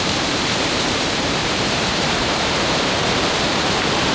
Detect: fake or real fake